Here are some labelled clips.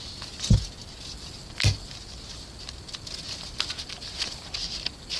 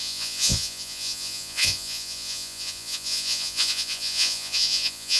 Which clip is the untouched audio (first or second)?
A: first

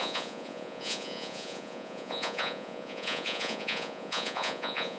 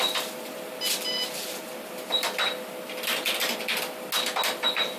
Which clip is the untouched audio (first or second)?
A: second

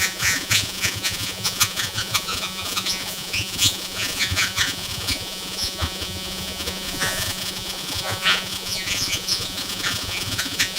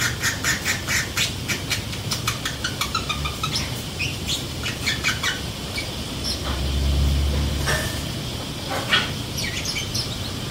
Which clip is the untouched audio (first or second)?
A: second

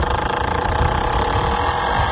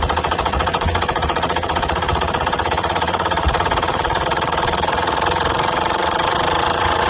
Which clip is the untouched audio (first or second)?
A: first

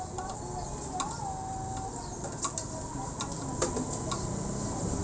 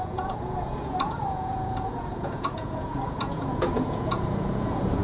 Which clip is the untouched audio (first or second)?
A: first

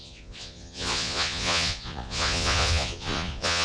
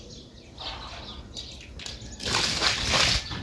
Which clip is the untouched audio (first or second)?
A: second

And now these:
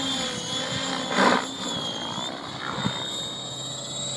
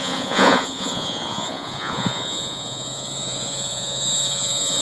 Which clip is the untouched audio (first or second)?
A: first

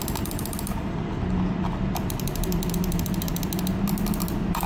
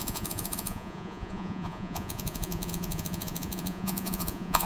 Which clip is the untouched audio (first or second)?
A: first